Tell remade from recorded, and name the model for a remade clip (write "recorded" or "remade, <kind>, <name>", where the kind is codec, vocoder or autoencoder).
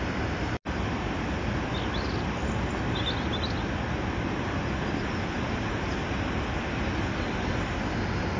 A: recorded